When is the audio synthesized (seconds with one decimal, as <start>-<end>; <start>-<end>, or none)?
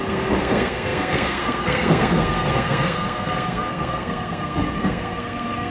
0.0-5.7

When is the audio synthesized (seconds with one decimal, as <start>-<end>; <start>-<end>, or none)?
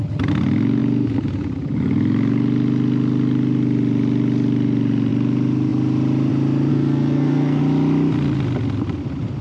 6.7-7.6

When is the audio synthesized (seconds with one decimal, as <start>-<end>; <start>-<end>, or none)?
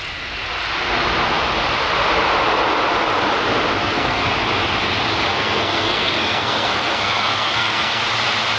3.8-4.3; 5.3-8.0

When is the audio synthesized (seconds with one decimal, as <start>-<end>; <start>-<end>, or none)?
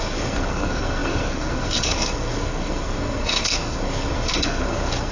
0.0-5.1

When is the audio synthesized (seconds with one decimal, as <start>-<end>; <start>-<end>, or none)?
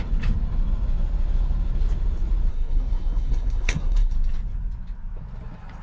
2.5-4.1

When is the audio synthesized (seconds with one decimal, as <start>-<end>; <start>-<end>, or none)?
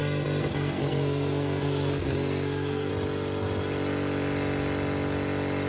0.0-2.9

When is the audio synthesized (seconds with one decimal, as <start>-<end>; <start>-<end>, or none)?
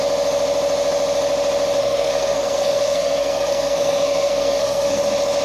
1.8-5.0